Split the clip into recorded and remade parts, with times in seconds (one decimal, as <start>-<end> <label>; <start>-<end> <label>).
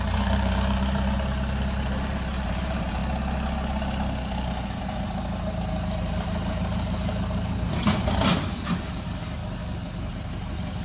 0.0-3.0 remade; 3.0-4.8 recorded; 4.8-9.4 remade; 9.4-10.1 recorded; 10.1-10.8 remade